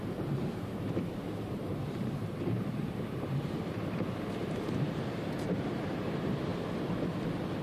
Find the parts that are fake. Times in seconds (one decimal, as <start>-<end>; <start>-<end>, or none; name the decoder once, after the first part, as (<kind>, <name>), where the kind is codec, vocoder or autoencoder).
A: 0.0-6.5 (vocoder, BigVGAN v2)